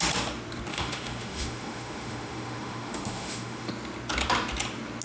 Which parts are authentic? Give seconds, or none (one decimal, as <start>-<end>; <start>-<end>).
0.0-0.7; 3.7-5.0